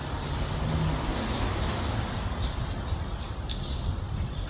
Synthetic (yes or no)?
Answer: no